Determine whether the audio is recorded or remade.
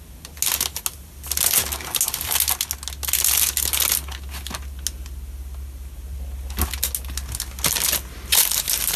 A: recorded